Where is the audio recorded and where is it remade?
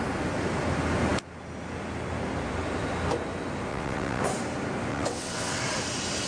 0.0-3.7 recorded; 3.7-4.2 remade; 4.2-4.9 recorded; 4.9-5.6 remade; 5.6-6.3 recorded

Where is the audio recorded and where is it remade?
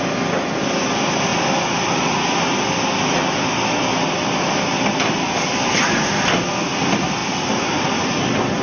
0.0-8.6 recorded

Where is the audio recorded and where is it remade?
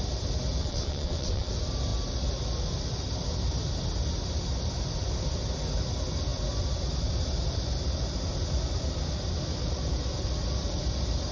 0.0-0.6 recorded; 0.6-1.5 remade; 1.5-11.3 recorded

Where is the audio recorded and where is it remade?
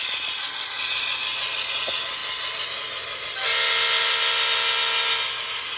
0.0-5.8 recorded